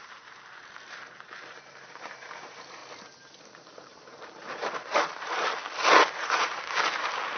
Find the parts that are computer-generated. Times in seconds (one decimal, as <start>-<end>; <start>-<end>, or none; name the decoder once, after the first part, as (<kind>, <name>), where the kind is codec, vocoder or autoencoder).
0.0-2.8 (vocoder, BigVGAN v2); 3.4-5.6; 6.4-7.4